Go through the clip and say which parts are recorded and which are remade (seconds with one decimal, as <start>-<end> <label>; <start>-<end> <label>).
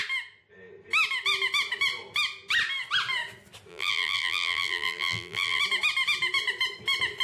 0.0-3.7 recorded; 3.7-5.6 remade; 5.6-7.2 recorded